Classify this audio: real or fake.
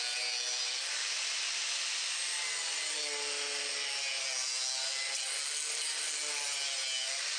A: real